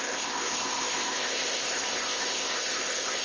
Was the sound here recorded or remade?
remade